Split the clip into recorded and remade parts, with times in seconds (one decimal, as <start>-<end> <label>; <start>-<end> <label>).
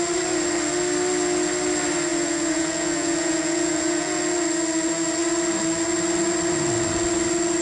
0.0-2.1 recorded; 2.1-4.2 remade; 4.2-7.6 recorded